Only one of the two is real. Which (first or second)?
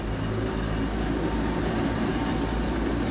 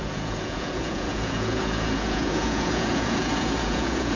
first